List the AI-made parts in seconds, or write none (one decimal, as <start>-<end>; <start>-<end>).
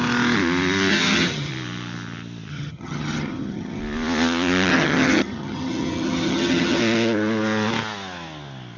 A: 0.9-1.5; 2.5-3.8; 4.7-6.8